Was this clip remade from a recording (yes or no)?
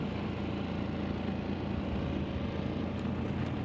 no